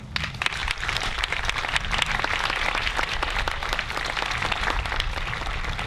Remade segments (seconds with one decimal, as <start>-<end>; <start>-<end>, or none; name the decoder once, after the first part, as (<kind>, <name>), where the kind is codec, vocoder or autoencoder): 0.6-1.4 (vocoder, BigVGAN v2)